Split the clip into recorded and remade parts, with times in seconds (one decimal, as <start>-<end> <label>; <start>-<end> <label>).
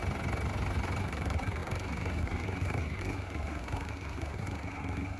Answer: 0.0-1.0 recorded; 1.0-5.2 remade